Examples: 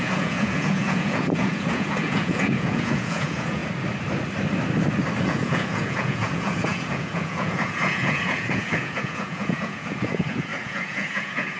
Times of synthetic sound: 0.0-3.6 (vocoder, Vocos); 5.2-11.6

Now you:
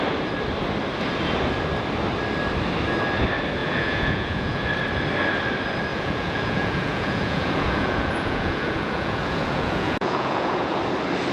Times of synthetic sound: 3.6-4.7 (vocoder, Vocos); 5.9-10.8

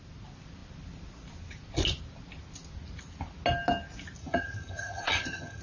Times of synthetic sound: 4.2-5.6 (vocoder, HiFi-GAN)

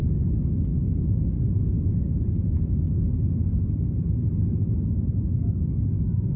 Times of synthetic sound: none

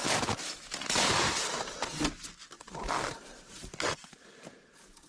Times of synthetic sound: 3.1-5.1 (vocoder, BigVGAN v2)

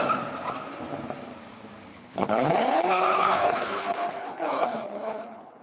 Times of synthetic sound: 1.9-5.6 (codec, HILCodec)